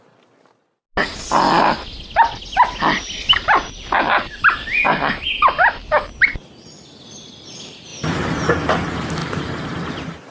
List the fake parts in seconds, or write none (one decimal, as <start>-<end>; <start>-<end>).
7.9-8.5; 9.2-10.3